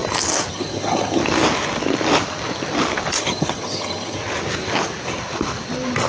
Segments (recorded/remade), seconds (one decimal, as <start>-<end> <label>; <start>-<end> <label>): 0.0-0.5 recorded; 0.5-1.2 remade; 1.2-3.2 recorded; 3.2-4.2 remade; 4.2-6.1 recorded